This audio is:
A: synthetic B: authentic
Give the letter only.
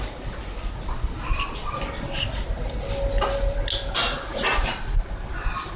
B